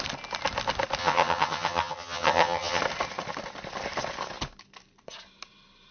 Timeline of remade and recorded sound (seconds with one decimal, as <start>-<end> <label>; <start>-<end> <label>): 0.0-1.0 recorded; 1.0-2.8 remade; 2.8-5.9 recorded